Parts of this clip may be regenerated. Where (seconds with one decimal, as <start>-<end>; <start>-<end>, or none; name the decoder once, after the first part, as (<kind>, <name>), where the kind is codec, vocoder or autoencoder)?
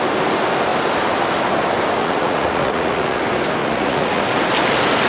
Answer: 2.0-3.2 (vocoder, Vocos); 3.6-4.2